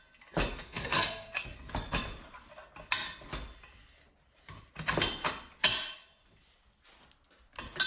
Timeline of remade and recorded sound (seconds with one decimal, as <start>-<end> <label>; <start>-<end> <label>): 0.0-0.5 recorded; 0.5-1.6 remade; 1.6-7.9 recorded